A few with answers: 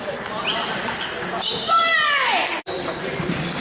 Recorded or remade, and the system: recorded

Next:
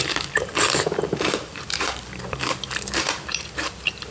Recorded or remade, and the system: remade, vocoder, BigVGAN v2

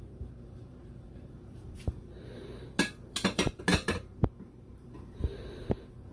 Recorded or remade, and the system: remade, vocoder, BigVGAN v2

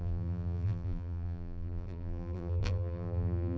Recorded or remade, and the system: remade, vocoder, BigVGAN v2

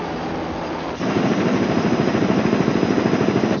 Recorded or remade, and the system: recorded